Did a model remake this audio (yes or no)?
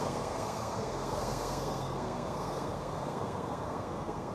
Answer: yes